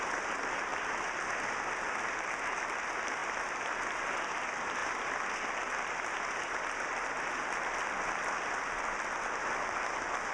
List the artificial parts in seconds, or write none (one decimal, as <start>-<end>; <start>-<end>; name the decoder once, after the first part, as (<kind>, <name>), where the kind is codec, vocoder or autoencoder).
none